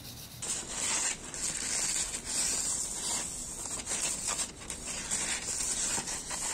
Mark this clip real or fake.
real